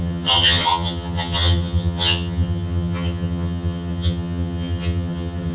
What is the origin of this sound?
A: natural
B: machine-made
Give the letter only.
B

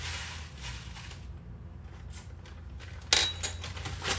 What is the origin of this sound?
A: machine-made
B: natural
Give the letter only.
B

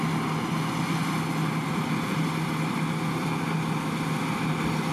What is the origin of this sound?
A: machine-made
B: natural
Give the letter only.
B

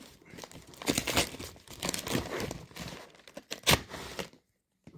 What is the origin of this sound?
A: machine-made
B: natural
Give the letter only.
B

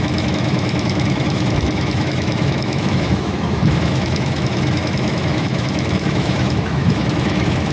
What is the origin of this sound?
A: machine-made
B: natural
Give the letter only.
A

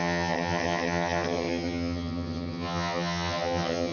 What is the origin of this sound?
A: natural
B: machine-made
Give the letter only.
B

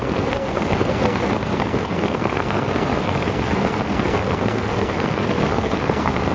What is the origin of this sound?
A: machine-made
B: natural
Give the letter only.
A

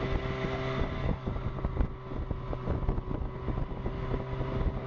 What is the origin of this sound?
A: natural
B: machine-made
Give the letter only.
A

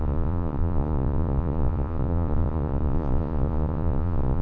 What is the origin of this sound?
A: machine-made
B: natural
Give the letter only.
A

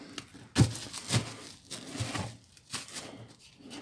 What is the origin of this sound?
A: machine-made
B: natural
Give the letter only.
B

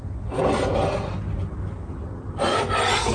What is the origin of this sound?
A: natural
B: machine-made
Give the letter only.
A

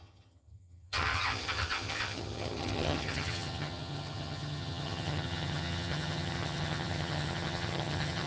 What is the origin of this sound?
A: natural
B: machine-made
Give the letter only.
B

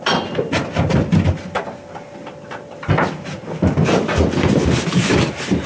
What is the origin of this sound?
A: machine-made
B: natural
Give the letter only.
B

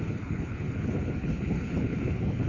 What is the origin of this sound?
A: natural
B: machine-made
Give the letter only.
B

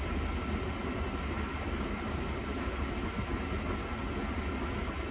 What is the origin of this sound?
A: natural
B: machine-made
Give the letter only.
A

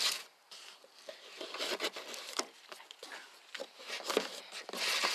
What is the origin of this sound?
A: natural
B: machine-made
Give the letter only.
A